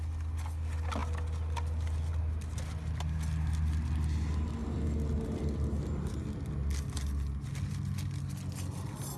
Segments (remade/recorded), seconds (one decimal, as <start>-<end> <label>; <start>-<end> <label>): 0.0-9.2 recorded

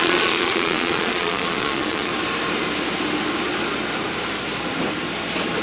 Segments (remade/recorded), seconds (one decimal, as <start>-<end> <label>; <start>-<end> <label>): 0.0-2.1 remade; 2.1-5.6 recorded

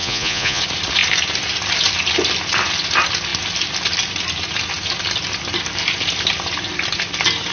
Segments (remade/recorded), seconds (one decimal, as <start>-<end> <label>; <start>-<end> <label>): 0.0-0.6 remade; 0.6-7.5 recorded

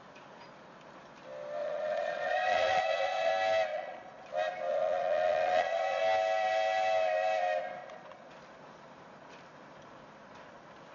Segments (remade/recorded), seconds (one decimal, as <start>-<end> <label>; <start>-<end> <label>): 0.0-1.6 recorded; 1.6-3.3 remade; 3.3-3.7 recorded; 3.7-4.3 remade; 4.3-4.7 recorded; 4.7-6.0 remade; 6.0-7.8 recorded; 7.8-8.3 remade; 8.3-10.9 recorded

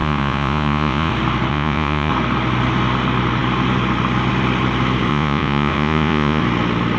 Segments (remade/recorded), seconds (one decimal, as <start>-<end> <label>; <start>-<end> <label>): 0.0-1.1 remade; 1.1-1.5 recorded; 1.5-2.1 remade; 2.1-5.1 recorded; 5.1-6.4 remade; 6.4-7.0 recorded

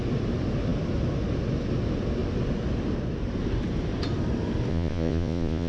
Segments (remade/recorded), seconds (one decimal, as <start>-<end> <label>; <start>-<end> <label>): 0.0-4.7 recorded; 4.7-5.7 remade

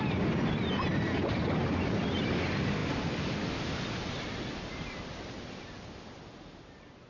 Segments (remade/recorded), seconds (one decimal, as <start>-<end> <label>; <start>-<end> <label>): 0.0-7.1 recorded